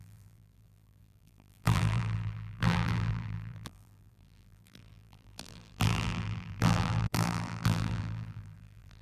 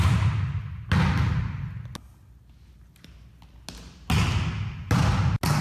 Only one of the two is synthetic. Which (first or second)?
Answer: first